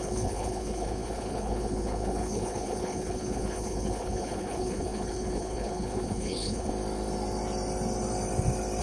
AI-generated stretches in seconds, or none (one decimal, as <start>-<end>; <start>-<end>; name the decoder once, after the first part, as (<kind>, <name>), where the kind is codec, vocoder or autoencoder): 0.0-6.7 (codec, HILCodec)